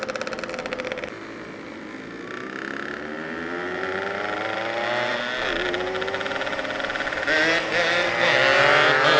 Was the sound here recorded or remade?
recorded